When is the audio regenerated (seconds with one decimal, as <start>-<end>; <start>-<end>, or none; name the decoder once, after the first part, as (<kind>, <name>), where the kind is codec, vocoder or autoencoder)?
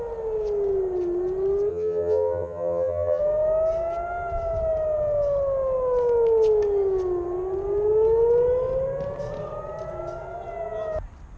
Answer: 1.7-3.2 (vocoder, HiFi-GAN)